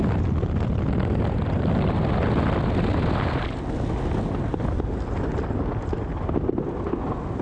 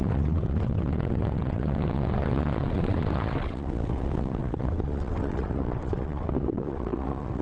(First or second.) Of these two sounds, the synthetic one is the second